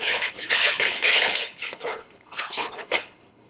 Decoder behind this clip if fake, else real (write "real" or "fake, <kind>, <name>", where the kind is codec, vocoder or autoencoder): fake, codec, HILCodec